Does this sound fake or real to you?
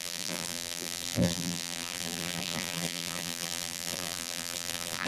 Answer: fake